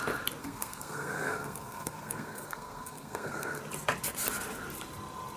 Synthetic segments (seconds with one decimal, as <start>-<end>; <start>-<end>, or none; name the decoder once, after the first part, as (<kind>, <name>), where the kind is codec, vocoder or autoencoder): 0.4-3.6 (codec, SNAC)